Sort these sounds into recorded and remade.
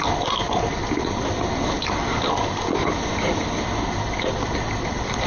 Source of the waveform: recorded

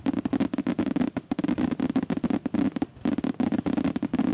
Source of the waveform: recorded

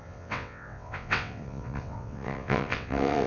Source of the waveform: remade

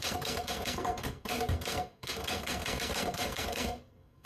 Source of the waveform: remade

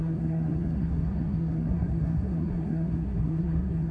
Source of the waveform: remade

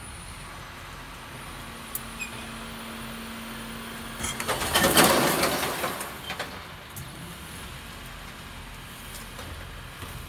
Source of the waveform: recorded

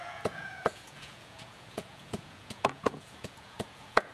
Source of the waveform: remade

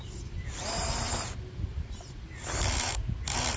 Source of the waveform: recorded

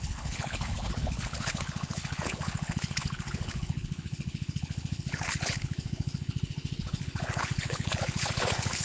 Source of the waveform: remade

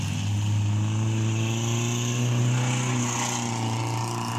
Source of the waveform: recorded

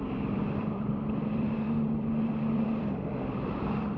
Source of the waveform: remade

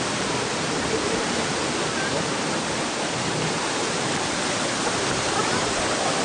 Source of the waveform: recorded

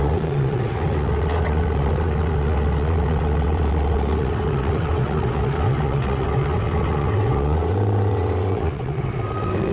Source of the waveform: remade